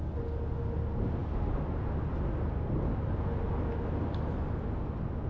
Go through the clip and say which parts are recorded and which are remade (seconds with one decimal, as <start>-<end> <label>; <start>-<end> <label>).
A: 0.0-5.3 recorded